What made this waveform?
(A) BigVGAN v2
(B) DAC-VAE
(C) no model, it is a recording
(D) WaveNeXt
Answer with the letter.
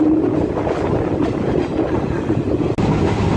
C